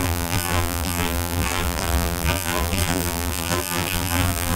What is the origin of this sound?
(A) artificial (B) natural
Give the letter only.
A